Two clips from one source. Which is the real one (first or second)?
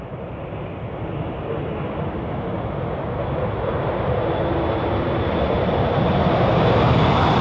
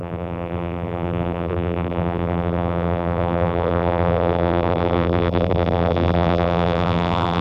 first